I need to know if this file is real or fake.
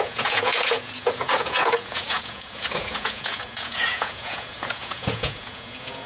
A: fake